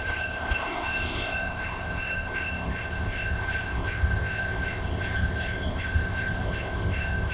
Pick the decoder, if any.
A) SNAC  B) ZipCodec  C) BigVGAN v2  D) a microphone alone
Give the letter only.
B